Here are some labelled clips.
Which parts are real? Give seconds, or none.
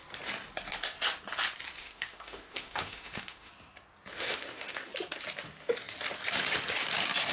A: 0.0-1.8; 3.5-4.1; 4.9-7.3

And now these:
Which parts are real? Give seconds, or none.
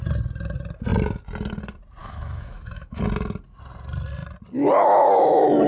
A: 0.0-2.0; 3.0-5.7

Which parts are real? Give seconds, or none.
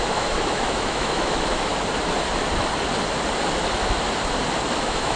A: 1.7-4.8